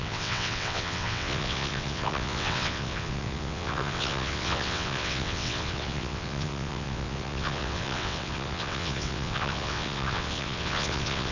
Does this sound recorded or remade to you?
remade